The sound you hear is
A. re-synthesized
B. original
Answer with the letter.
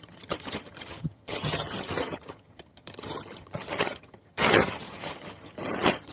A